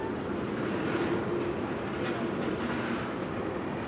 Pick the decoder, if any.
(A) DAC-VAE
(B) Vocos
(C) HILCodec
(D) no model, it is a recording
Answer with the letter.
D